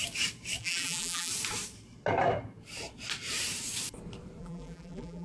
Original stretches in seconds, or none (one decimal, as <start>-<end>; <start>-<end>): 0.0-0.6; 1.3-4.4